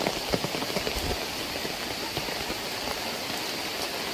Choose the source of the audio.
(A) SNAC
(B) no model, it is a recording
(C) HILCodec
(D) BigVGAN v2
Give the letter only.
B